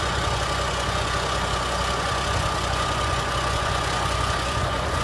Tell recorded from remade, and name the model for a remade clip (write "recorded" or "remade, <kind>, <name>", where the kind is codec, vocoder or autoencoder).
remade, vocoder, Vocos